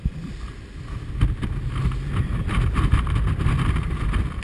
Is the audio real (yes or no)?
yes